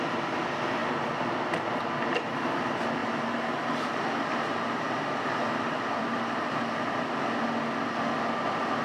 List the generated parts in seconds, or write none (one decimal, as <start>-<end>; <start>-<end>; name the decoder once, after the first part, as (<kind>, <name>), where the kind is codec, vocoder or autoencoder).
0.8-1.8 (vocoder, BigVGAN v2); 3.0-7.4